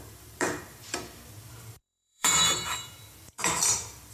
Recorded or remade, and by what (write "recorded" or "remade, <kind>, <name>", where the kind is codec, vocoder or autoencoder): remade, vocoder, BigVGAN v2